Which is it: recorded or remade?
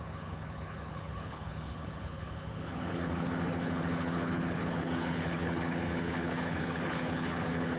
remade